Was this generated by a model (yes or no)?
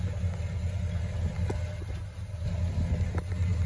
no